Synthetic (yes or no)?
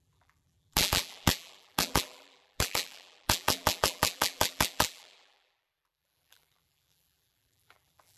yes